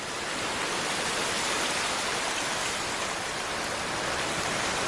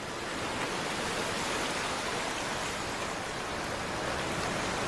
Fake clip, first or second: first